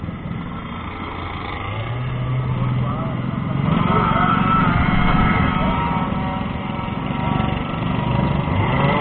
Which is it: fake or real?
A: real